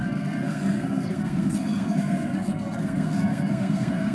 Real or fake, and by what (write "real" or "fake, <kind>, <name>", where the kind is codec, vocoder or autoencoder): fake, codec, SNAC